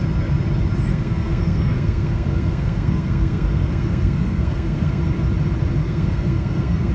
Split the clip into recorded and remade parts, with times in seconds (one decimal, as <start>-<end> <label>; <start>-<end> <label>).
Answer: 0.0-0.9 recorded; 0.9-5.0 remade; 5.0-5.8 recorded; 5.8-6.9 remade